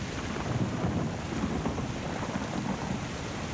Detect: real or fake real